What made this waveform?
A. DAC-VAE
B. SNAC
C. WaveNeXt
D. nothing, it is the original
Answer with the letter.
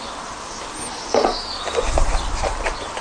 D